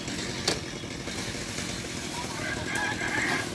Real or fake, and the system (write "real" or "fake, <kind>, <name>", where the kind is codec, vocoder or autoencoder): real